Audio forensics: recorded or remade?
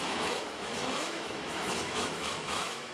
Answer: remade